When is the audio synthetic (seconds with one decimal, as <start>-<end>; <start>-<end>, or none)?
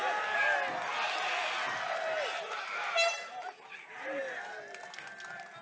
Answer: 2.5-4.2